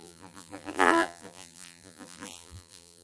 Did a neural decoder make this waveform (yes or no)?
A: yes